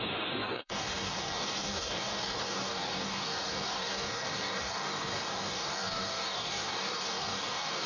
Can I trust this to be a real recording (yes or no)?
no